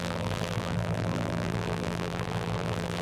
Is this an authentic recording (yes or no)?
no